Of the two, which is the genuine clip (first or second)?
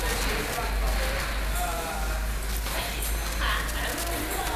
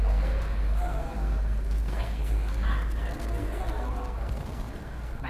first